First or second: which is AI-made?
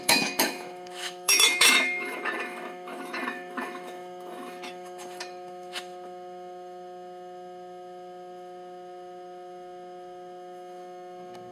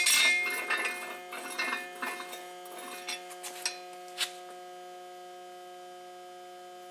first